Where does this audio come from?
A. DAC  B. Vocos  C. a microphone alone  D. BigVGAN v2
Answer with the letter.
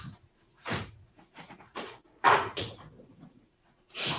B